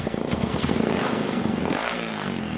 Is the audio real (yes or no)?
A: no